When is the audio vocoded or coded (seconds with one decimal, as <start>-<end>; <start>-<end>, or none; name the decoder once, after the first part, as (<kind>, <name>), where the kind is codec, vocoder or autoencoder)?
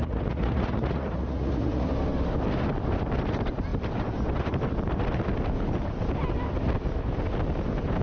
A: 0.0-1.9 (vocoder, Vocos)